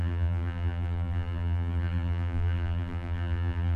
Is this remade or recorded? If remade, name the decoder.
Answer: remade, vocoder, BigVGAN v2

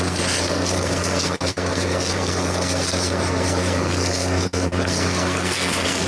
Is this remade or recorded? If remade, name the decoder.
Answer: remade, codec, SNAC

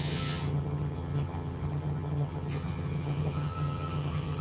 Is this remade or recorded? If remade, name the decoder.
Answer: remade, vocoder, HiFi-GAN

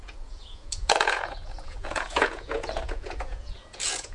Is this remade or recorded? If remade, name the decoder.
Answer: remade, vocoder, Vocos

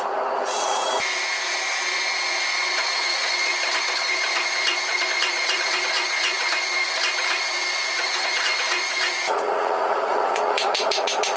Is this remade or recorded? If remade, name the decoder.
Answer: remade, vocoder, Vocos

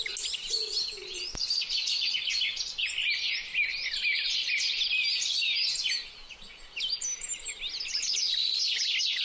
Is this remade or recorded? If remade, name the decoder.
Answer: recorded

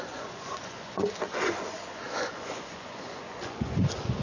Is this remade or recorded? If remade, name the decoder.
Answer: remade, vocoder, Vocos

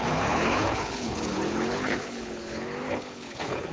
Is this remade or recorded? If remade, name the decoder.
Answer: remade, codec, HILCodec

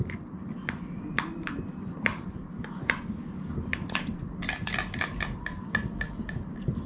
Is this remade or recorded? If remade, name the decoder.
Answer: recorded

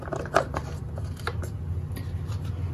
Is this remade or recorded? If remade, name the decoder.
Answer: recorded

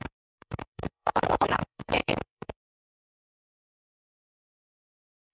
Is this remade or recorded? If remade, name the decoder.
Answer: remade, codec, DAC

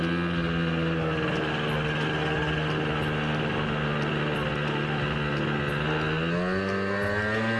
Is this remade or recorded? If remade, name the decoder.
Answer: recorded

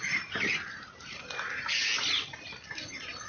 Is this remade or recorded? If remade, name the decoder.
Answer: recorded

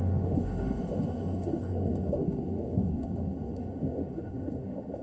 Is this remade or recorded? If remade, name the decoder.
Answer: remade, autoencoder, DAC-VAE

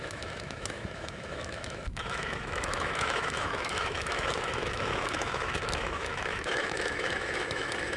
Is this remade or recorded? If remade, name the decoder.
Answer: remade, autoencoder, DAC-VAE